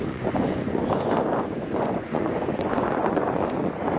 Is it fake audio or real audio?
fake